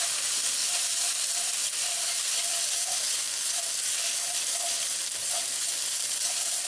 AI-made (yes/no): no